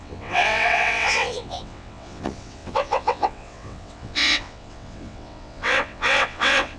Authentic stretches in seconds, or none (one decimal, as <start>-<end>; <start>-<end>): none